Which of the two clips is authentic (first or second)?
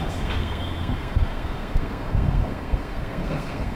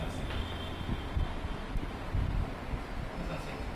second